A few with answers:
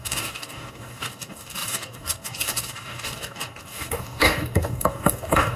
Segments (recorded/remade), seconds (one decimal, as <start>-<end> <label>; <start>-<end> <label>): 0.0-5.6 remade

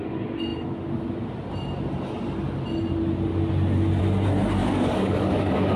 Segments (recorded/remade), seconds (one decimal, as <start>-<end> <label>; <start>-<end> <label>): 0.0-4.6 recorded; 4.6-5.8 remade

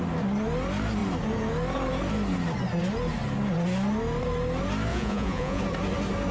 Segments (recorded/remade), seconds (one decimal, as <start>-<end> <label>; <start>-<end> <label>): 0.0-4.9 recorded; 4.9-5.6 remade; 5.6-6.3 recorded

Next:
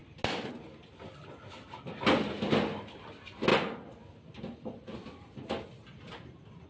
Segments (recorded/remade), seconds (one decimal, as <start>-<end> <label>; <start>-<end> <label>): 0.0-6.7 recorded

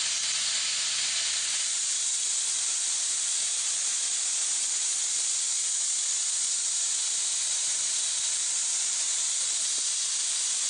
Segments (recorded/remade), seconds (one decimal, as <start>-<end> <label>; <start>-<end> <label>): 0.0-10.7 recorded